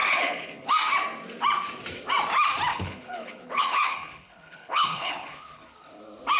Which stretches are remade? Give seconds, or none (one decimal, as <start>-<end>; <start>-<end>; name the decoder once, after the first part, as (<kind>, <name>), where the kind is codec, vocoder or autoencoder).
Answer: 0.0-0.7 (codec, HILCodec); 2.7-6.0